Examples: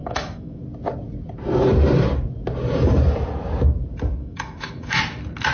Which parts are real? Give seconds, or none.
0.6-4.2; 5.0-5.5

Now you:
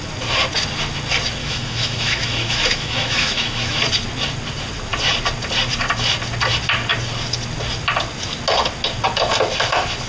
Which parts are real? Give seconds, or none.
0.0-1.4; 3.8-10.1